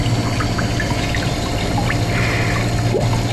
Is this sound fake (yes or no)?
no